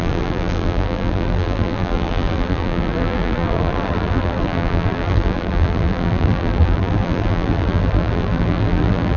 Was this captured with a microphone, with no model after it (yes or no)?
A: no